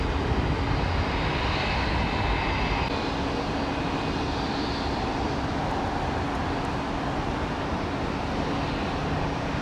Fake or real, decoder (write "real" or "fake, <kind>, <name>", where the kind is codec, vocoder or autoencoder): real